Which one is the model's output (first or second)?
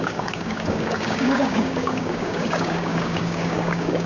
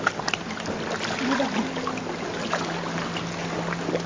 first